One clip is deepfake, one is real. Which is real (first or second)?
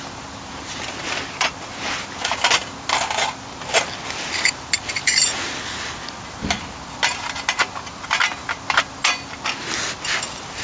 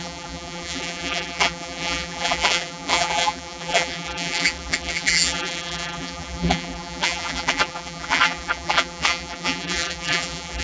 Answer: first